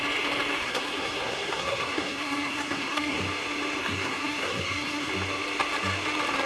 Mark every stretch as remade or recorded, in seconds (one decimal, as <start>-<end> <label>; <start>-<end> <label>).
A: 0.0-0.6 recorded; 0.6-3.2 remade; 3.2-3.8 recorded; 3.8-5.1 remade; 5.1-6.5 recorded